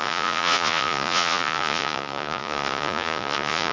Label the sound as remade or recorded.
remade